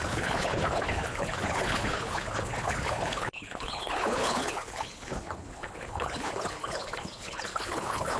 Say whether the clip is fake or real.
fake